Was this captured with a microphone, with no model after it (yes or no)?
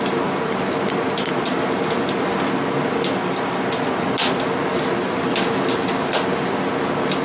yes